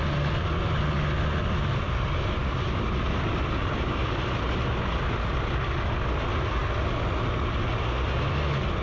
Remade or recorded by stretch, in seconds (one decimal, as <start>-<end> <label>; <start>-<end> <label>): 0.0-8.8 recorded